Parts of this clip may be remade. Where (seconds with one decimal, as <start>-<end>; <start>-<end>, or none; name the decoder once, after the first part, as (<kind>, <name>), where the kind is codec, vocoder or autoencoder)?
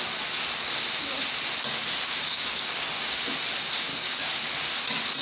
1.8-3.2 (codec, DAC); 3.9-4.5